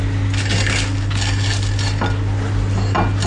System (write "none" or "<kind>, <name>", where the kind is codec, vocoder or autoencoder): none